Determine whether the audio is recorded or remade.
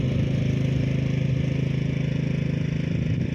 recorded